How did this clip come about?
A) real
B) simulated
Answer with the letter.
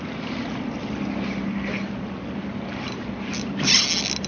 A